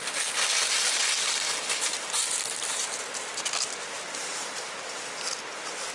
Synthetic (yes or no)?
no